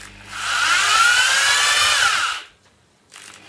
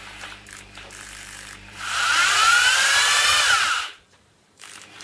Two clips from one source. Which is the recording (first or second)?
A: first